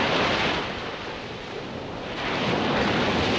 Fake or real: real